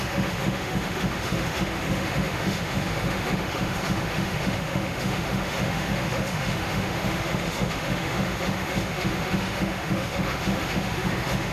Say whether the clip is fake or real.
fake